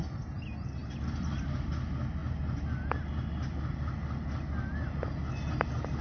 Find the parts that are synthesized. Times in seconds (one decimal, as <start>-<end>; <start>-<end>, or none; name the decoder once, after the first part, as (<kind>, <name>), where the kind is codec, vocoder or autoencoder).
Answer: none